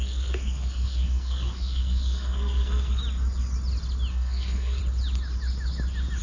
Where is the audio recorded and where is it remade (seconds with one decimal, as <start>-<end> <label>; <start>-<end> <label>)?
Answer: 0.0-3.0 remade; 3.0-4.1 recorded; 4.1-4.8 remade; 4.8-6.2 recorded